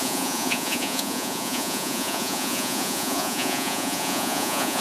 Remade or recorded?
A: remade